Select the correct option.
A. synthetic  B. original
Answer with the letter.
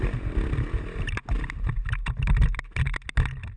B